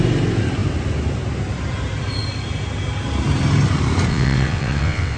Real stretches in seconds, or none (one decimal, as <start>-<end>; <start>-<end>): 0.0-4.1